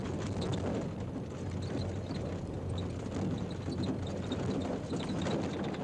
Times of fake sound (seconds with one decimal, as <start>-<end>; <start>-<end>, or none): none